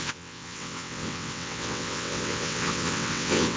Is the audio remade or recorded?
remade